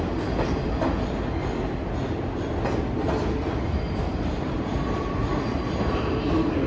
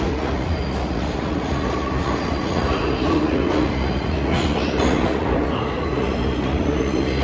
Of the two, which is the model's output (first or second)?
second